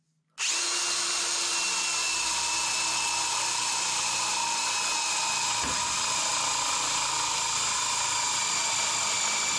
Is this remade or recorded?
recorded